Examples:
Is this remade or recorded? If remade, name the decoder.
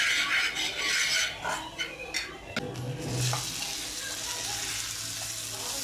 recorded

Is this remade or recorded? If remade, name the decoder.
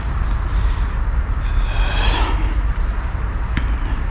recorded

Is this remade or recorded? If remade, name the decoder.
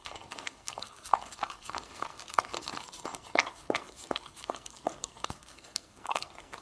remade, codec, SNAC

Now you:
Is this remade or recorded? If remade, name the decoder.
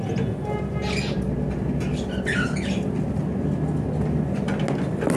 recorded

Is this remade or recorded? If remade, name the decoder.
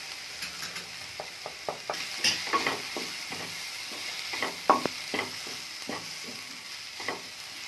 recorded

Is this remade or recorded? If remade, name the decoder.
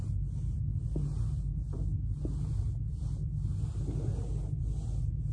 recorded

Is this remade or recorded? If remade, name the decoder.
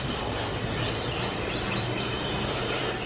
remade, vocoder, BigVGAN v2